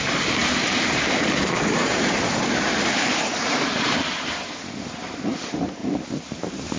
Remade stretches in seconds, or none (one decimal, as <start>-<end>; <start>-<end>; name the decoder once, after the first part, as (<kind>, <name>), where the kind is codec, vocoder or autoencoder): 0.0-6.8 (vocoder, BigVGAN v2)